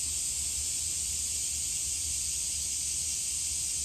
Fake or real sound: real